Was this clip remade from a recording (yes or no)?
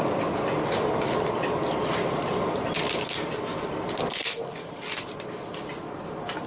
no